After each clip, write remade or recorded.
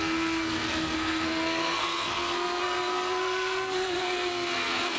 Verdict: remade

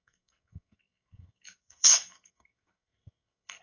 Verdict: remade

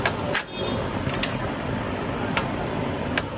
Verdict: recorded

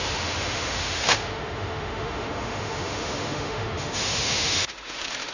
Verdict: remade